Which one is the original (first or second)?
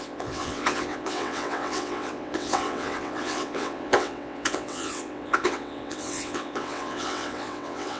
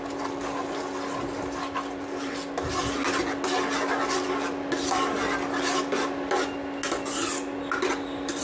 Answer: second